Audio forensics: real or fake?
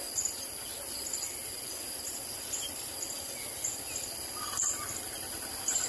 real